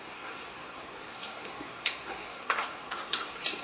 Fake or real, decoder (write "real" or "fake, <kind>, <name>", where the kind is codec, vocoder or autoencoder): fake, codec, SNAC